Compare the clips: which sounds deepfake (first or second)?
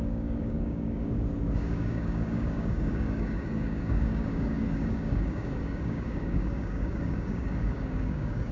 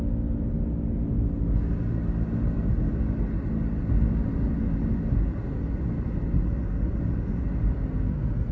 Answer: first